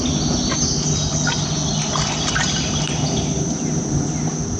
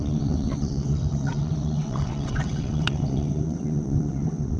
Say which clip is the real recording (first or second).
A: first